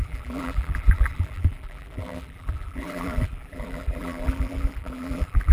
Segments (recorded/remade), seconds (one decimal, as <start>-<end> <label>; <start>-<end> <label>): 0.0-5.5 remade